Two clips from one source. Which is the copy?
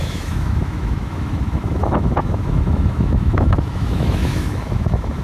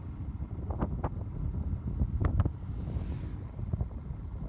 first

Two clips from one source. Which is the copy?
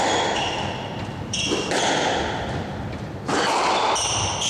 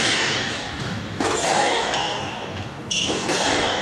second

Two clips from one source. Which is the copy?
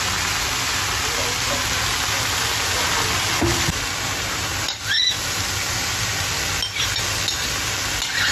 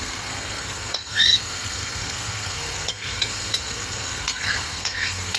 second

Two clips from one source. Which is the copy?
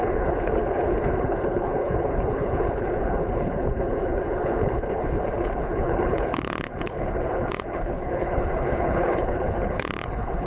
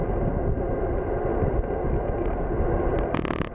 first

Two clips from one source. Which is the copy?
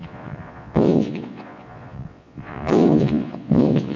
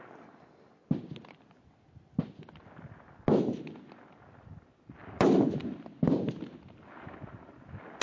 first